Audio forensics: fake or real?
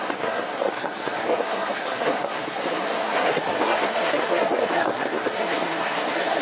fake